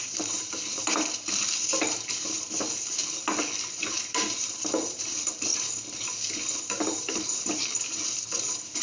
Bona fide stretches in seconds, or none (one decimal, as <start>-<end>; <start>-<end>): 1.4-2.2; 3.0-3.7; 5.5-7.0